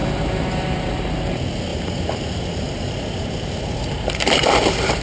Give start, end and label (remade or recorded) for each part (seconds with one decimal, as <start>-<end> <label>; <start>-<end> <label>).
0.0-1.0 remade; 1.0-1.7 recorded; 1.7-5.0 remade